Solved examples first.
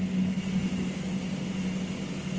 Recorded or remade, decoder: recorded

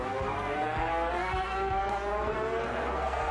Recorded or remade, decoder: remade, codec, SNAC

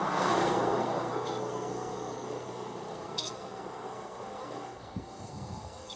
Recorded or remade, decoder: remade, codec, SNAC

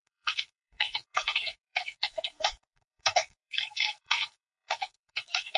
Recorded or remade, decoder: remade, codec, SNAC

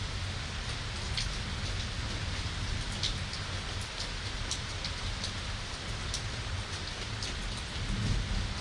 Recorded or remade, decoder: recorded